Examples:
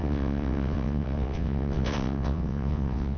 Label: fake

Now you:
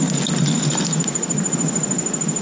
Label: real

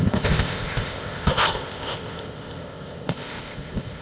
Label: fake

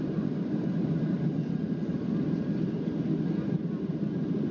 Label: real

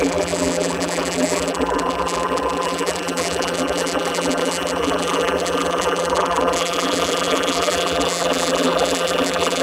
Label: fake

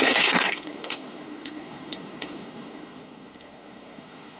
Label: fake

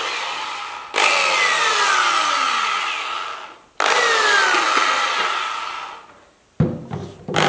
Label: real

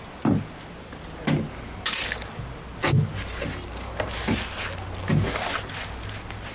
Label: real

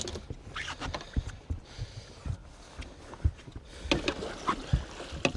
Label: real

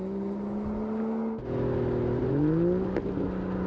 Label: real